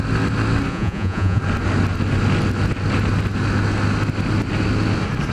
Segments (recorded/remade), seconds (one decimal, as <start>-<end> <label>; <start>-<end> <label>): 0.0-0.7 recorded; 0.7-1.4 remade; 1.4-5.3 recorded